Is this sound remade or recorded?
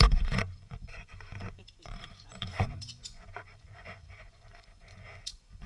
remade